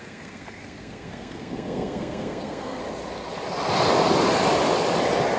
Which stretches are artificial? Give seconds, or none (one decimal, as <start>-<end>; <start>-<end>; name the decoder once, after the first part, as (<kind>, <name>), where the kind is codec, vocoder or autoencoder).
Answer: 0.0-2.8 (codec, SNAC)